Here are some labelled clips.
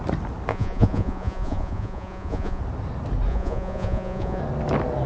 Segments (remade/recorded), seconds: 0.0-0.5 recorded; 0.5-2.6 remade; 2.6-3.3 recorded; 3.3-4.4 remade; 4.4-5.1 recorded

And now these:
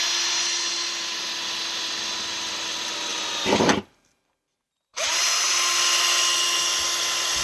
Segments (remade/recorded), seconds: 0.0-3.1 recorded; 3.1-4.3 remade; 4.3-7.4 recorded

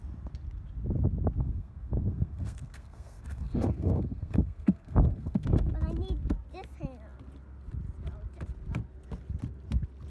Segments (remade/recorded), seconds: 0.0-1.4 recorded; 1.4-5.7 remade; 5.7-10.1 recorded

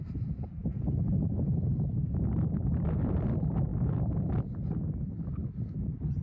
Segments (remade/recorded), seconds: 0.0-6.2 recorded

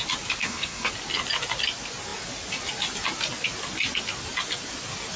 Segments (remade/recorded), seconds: 0.0-0.4 recorded; 0.4-0.9 remade; 0.9-5.2 recorded